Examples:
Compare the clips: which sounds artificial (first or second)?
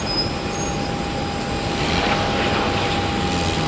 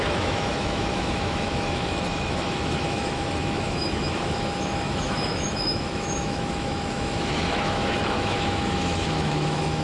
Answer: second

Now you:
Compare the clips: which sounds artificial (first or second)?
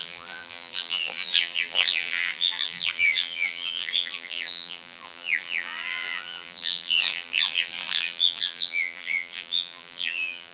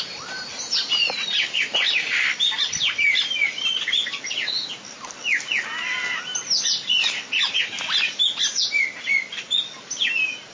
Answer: first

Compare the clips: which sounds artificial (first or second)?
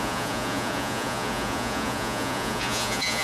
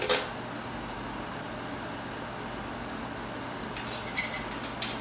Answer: first